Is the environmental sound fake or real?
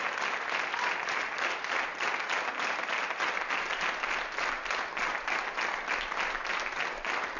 real